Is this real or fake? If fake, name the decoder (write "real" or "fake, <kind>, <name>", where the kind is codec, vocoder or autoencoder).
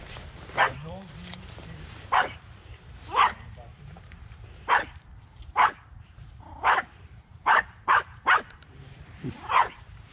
fake, vocoder, BigVGAN v2